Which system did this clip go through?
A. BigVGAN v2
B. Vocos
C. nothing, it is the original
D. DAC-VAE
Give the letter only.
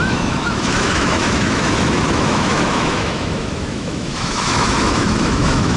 D